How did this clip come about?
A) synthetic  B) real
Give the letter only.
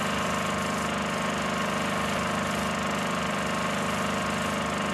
B